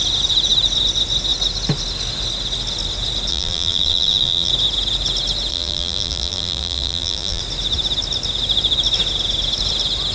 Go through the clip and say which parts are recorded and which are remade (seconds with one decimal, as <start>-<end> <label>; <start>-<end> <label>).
0.0-3.3 recorded; 3.3-4.5 remade; 4.5-5.5 recorded; 5.5-7.4 remade; 7.4-10.1 recorded